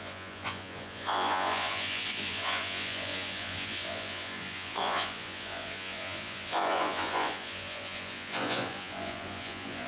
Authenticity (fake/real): fake